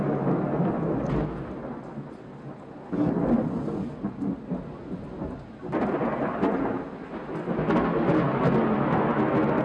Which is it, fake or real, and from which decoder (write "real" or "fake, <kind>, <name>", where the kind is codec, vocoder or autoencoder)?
real